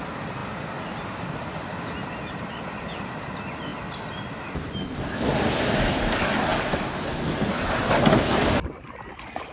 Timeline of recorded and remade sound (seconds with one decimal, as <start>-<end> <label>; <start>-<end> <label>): 0.0-9.5 recorded